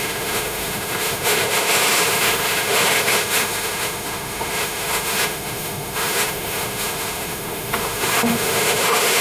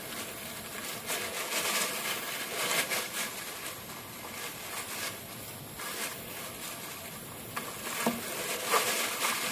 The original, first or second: second